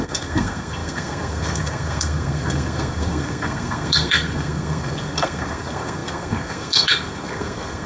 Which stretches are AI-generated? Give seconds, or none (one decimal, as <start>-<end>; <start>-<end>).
0.0-7.9